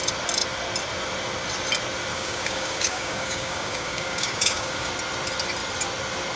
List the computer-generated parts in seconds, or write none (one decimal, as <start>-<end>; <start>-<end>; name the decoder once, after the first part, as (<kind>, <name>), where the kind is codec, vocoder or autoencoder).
2.1-4.9 (codec, DAC)